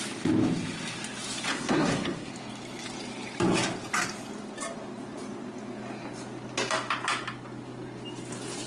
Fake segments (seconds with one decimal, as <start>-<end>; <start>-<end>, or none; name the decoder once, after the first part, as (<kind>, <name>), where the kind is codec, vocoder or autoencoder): 1.5-2.3 (codec, SNAC)